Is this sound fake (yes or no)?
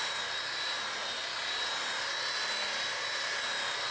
no